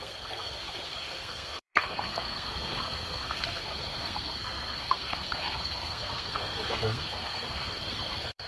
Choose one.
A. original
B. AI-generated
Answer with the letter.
B